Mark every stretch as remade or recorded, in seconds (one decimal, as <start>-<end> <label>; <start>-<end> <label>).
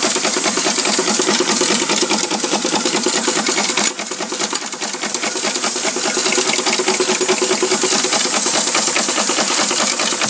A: 0.0-10.3 recorded